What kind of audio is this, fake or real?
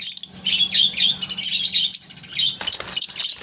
real